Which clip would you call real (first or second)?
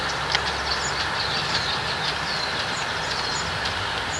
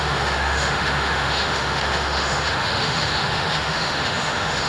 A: first